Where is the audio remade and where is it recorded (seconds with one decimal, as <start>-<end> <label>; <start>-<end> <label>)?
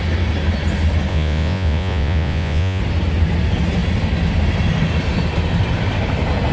0.0-1.1 recorded; 1.1-2.8 remade; 2.8-6.5 recorded